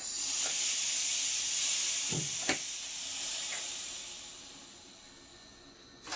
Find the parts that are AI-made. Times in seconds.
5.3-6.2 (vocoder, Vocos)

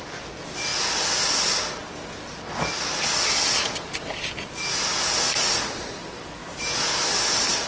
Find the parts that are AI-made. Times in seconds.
4.9-6.0 (vocoder, Vocos)